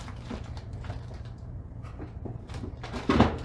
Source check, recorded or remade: remade